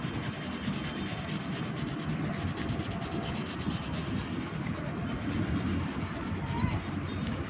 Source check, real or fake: real